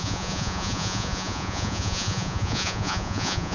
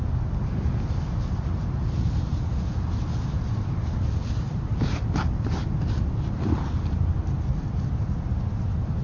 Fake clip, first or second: first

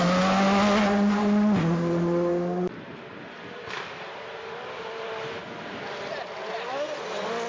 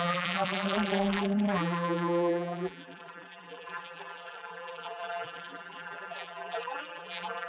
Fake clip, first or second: second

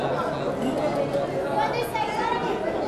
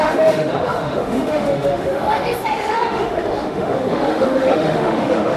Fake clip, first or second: second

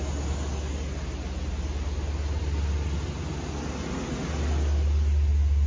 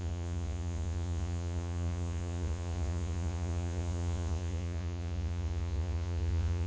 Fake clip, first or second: second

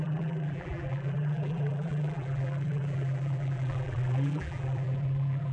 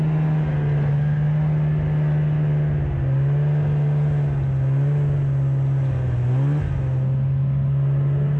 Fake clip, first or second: first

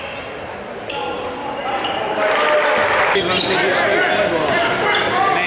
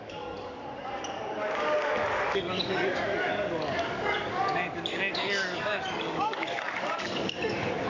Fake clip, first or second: second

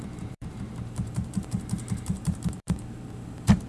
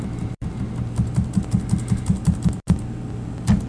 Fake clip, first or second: first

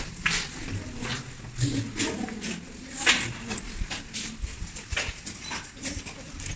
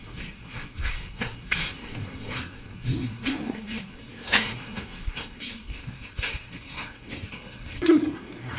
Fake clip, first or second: second